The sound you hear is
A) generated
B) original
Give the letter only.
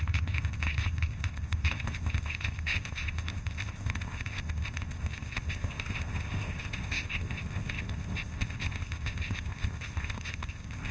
A